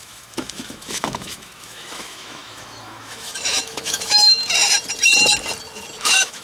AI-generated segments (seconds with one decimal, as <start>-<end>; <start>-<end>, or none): 0.0-4.4; 6.0-6.4